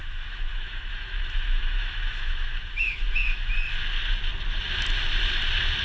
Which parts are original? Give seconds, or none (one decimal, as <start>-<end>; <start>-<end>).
3.5-5.8